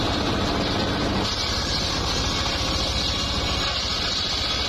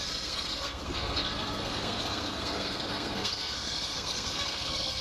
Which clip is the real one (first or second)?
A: first